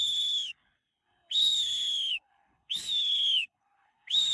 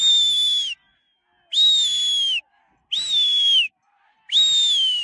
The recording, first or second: second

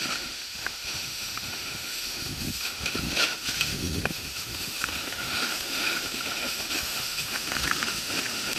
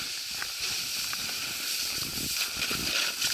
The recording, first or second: second